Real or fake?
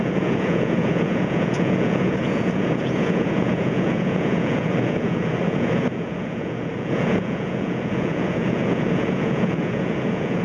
fake